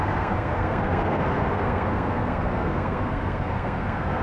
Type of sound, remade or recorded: remade